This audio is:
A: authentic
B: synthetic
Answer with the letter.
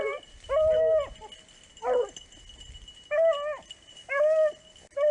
A